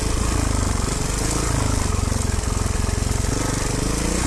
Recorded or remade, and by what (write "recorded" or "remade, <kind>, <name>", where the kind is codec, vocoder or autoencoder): recorded